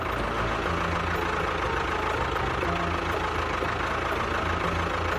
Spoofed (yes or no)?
no